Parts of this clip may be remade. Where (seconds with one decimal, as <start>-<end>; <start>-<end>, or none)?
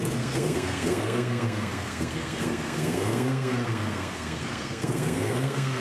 0.0-5.8